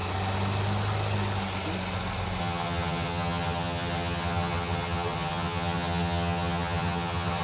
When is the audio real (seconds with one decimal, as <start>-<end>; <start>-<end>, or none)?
0.0-2.4